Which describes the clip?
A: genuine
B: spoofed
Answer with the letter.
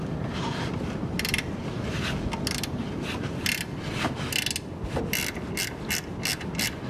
A